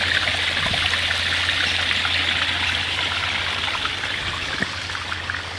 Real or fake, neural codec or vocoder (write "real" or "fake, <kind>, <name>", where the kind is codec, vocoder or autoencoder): real